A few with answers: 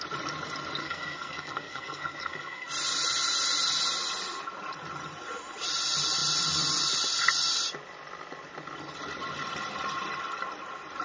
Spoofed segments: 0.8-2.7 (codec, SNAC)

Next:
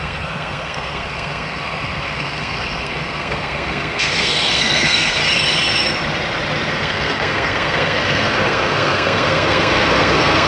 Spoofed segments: 0.0-5.2 (codec, SNAC); 6.7-10.5

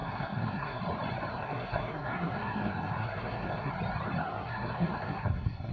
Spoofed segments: 0.0-0.8 (codec, SNAC); 1.3-3.7; 4.2-5.7

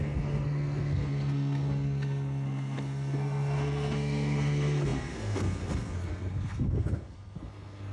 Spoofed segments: 0.0-7.9 (codec, SNAC)

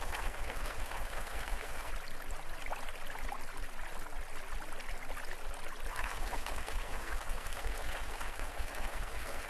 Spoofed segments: 0.0-1.9 (codec, SNAC); 5.9-9.5

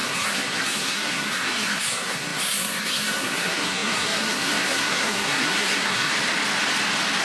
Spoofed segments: 0.0-6.1 (codec, SNAC)

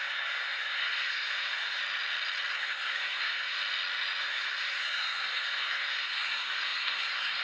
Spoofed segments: 0.0-1.8 (codec, SNAC); 2.5-3.6; 4.2-7.4